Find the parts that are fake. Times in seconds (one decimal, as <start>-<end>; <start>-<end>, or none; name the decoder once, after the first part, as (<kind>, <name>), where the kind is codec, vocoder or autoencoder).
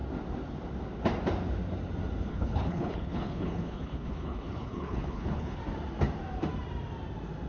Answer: 2.3-5.6 (codec, HILCodec)